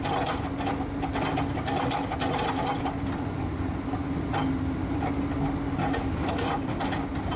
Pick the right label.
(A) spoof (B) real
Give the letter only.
B